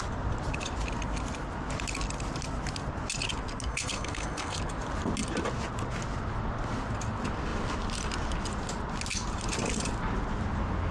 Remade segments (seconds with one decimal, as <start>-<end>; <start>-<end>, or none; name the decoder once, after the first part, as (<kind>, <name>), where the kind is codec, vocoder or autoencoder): 3.7-4.6 (codec, SNAC)